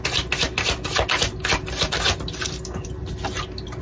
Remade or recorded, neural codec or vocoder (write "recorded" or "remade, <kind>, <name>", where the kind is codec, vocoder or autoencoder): recorded